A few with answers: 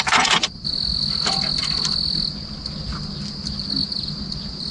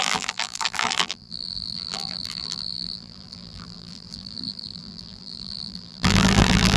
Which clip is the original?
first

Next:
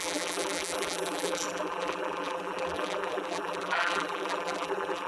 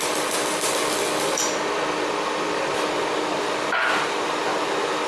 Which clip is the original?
second